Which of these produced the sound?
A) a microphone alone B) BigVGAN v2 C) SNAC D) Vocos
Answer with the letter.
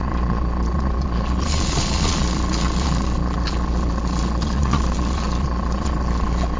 D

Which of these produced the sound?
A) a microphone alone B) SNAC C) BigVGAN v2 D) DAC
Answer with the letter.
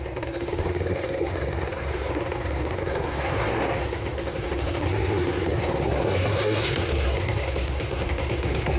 B